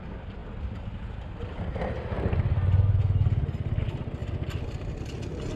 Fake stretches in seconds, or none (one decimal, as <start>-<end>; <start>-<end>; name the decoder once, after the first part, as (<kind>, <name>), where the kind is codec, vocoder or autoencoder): none